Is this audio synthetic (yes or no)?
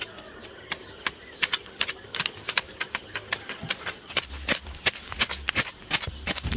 no